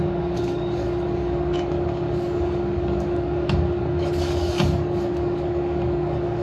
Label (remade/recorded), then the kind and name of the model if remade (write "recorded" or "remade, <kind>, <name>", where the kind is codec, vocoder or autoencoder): remade, codec, DAC